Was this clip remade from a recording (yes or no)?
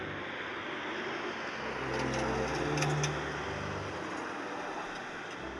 no